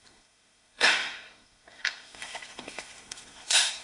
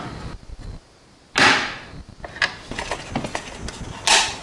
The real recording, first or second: second